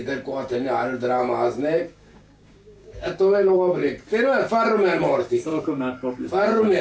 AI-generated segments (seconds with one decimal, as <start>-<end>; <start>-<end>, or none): 1.9-3.8; 5.0-6.8

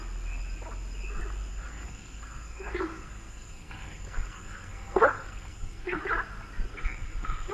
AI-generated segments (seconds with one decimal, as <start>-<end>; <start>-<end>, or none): 1.5-6.0; 6.7-7.5

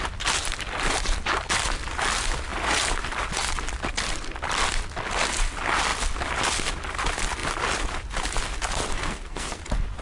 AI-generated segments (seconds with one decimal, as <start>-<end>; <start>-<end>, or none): 8.9-9.6

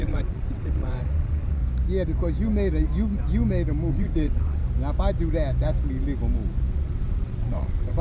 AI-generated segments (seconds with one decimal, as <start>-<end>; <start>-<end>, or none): 0.0-1.6; 3.9-4.6; 6.7-8.0

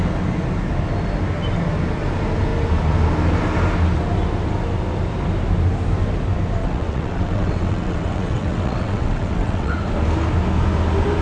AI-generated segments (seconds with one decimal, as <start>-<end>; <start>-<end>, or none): 6.6-9.7

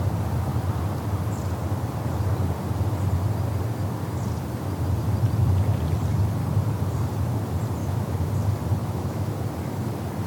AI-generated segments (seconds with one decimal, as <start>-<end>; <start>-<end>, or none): 7.8-8.3; 8.8-9.3

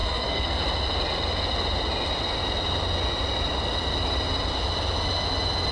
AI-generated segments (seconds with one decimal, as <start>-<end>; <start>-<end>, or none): 0.0-0.6

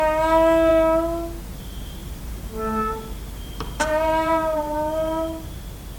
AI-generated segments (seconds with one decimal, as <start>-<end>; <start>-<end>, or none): 2.0-5.6